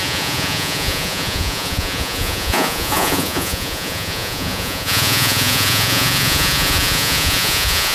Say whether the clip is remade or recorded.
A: remade